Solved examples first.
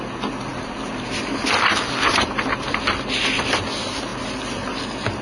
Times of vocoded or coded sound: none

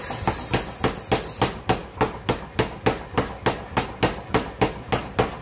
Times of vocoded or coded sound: none

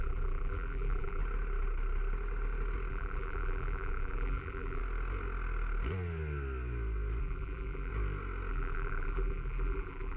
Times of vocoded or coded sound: 0.0-1.2 (vocoder, BigVGAN v2); 2.9-4.8; 7.2-7.9; 8.5-10.2

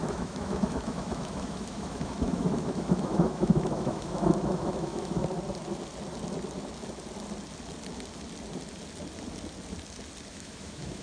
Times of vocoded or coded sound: 0.0-5.2 (autoencoder, DAC-VAE); 10.3-11.0

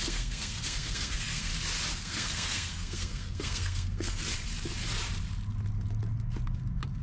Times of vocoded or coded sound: 0.0-1.5 (codec, SNAC); 2.0-4.3

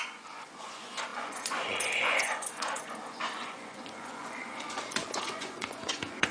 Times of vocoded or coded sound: 0.0-6.3 (vocoder, Vocos)